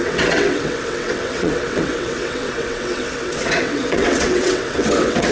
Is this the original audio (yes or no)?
no